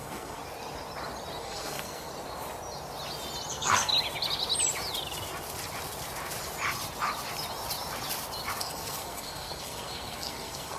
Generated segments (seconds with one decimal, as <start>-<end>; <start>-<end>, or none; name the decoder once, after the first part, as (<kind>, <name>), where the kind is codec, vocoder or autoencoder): 0.0-0.4 (codec, SNAC); 1.4-2.1; 3.5-3.9; 8.6-10.8